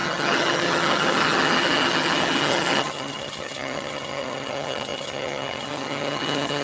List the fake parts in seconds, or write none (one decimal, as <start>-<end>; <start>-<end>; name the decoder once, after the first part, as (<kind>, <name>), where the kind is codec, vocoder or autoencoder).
0.0-6.6 (vocoder, HiFi-GAN)